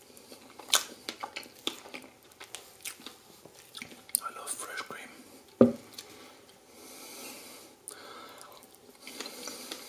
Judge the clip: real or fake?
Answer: real